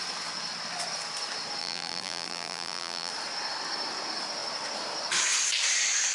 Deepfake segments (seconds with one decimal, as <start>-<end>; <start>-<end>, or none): 1.6-3.1